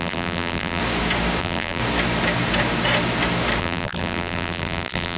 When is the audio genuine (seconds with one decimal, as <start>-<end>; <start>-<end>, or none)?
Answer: 0.8-1.4; 1.8-3.6